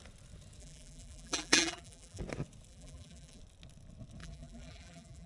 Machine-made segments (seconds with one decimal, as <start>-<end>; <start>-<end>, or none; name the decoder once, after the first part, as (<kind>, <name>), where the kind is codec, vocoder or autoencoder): 0.6-2.2 (vocoder, BigVGAN v2); 2.7-3.4; 4.2-5.3